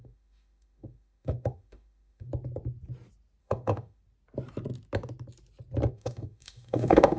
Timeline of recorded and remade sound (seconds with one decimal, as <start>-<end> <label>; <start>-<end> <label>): 0.0-2.3 remade; 2.3-3.4 recorded; 3.4-4.0 remade; 4.0-5.9 recorded; 5.9-7.2 remade

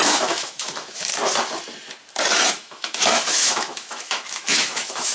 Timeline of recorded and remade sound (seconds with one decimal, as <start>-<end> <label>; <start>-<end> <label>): 0.0-1.1 remade; 1.1-2.5 recorded; 2.5-5.1 remade

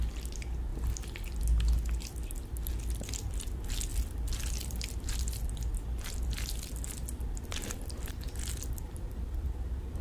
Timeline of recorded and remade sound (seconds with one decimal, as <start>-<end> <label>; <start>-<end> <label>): 0.0-10.0 recorded

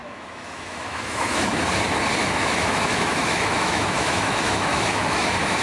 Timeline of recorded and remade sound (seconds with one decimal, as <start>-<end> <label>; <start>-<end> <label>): 0.0-1.6 remade; 1.6-2.2 recorded; 2.2-5.6 remade

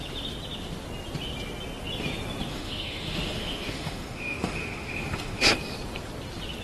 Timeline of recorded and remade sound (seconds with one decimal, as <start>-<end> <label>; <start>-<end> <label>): 0.0-2.5 recorded; 2.5-5.4 remade; 5.4-6.6 recorded

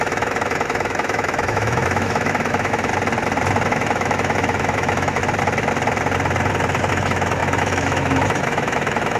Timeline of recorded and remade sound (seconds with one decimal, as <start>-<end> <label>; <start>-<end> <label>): 0.0-2.9 remade; 2.9-3.7 recorded; 3.7-5.2 remade; 5.2-6.9 recorded; 6.9-9.2 remade

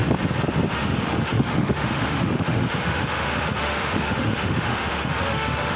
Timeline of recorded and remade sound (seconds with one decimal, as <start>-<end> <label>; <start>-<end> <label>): 0.0-0.7 recorded; 0.7-5.8 remade

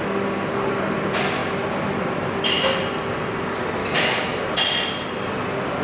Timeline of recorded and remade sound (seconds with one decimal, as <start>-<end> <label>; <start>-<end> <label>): 0.0-3.8 recorded; 3.8-4.4 remade; 4.4-5.8 recorded